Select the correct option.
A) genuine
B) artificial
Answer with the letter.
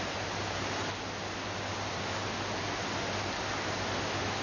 A